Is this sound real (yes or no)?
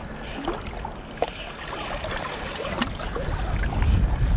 yes